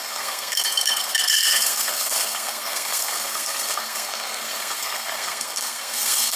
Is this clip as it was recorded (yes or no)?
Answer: no